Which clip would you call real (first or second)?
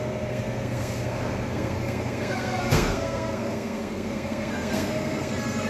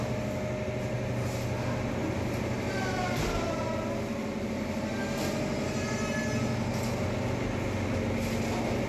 second